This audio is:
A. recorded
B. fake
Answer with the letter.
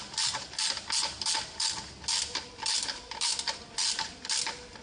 A